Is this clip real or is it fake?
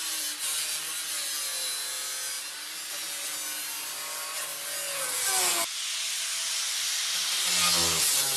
real